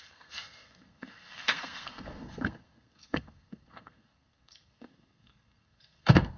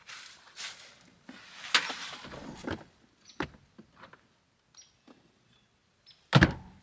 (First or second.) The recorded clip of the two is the second